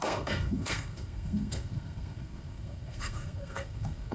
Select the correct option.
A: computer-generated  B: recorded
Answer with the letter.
A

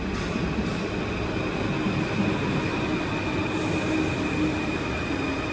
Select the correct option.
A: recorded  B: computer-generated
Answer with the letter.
A